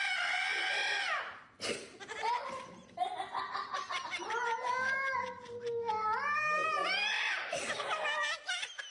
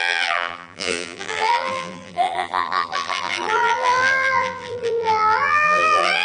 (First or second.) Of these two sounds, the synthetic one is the second